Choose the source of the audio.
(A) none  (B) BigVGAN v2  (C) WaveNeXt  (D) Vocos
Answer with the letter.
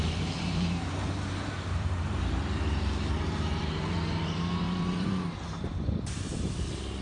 B